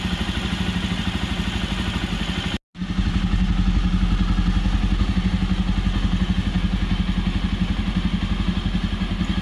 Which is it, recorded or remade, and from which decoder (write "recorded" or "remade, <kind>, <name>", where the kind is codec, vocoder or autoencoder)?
recorded